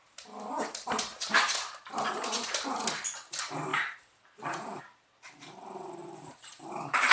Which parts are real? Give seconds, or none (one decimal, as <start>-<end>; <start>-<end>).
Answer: 1.1-3.3